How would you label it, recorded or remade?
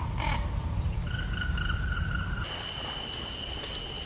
recorded